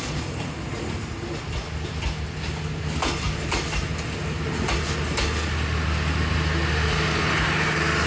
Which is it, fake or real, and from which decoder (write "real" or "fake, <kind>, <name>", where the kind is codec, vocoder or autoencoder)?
real